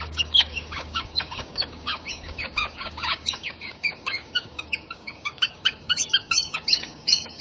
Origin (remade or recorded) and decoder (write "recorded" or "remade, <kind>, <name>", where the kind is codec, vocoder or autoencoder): remade, codec, DAC